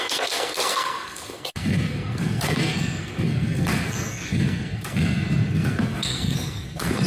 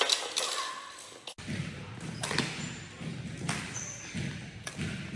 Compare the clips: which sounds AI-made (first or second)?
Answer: first